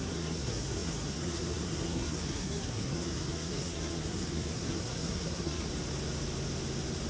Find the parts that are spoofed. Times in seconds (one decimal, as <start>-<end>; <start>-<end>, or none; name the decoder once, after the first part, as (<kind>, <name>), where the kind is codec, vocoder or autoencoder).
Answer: 0.0-5.7 (codec, SNAC)